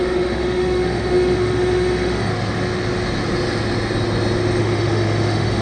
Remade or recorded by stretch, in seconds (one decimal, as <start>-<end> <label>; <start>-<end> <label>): 0.0-2.3 remade; 2.3-4.6 recorded; 4.6-5.6 remade